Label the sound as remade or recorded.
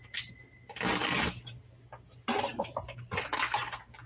recorded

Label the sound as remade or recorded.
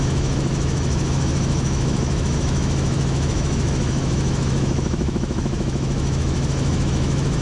remade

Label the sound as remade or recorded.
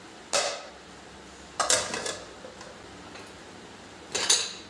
recorded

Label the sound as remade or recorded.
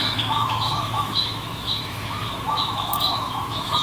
remade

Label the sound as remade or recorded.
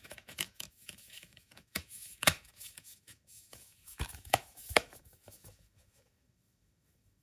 remade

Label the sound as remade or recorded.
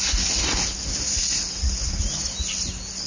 recorded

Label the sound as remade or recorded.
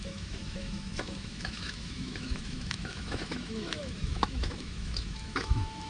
remade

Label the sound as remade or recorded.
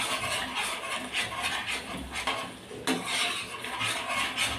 recorded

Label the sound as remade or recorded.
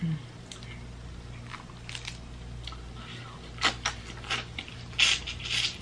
recorded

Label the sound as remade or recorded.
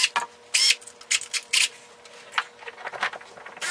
recorded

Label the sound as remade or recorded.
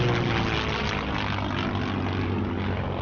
recorded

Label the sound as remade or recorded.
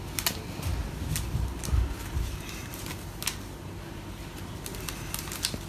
recorded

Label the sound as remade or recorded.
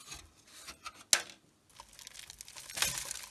recorded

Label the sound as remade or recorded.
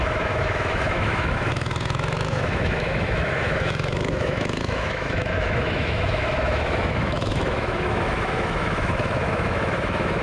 remade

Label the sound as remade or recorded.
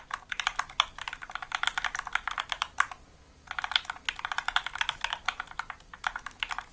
recorded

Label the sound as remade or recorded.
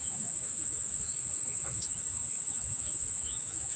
remade